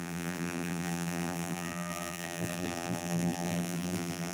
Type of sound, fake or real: fake